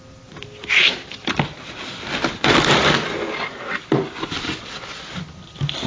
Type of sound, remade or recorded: remade